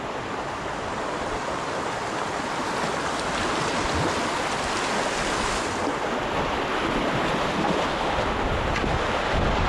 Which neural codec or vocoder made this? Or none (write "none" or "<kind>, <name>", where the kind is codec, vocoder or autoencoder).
none